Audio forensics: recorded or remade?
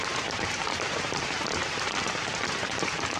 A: remade